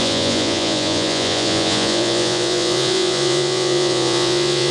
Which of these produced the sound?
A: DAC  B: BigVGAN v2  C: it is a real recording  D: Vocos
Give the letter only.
D